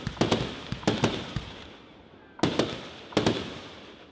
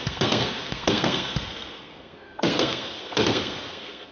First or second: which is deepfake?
second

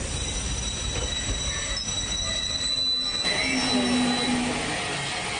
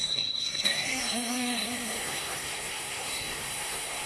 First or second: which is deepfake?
second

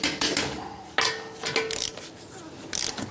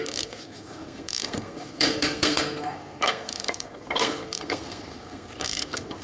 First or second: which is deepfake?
second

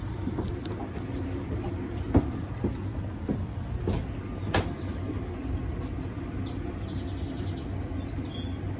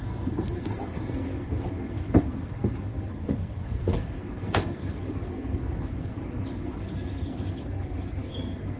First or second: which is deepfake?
second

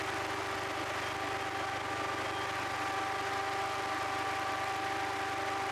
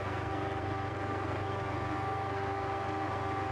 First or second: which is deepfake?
second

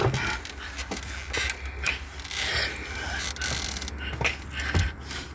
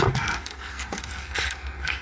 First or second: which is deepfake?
second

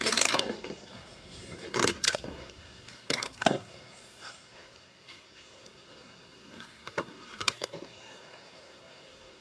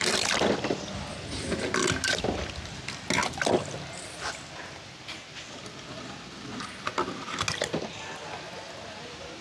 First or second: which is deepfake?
first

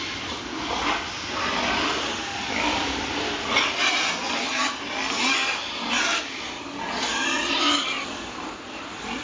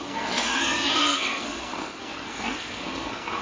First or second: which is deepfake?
second